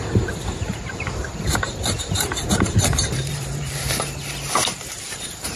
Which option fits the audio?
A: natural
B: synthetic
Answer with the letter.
B